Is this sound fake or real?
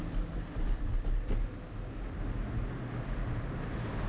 real